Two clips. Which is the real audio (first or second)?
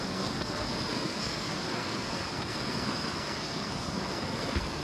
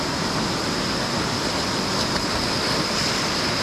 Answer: second